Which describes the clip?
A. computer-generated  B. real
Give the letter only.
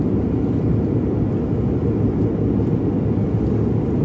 B